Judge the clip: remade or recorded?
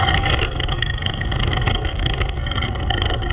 remade